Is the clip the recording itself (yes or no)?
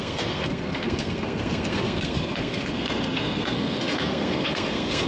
no